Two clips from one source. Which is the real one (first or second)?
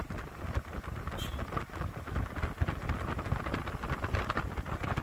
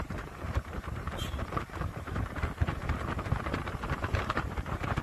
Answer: first